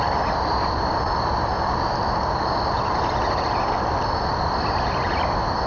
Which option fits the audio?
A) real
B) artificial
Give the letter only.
A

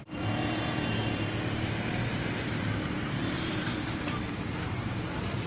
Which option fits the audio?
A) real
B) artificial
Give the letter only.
B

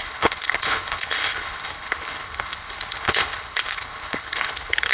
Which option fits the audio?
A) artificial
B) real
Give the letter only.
A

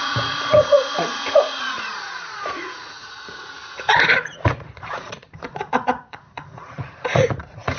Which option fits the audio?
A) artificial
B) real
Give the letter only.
A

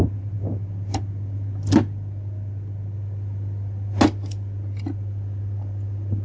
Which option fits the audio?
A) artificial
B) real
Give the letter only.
B